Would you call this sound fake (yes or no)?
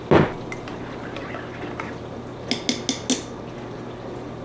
no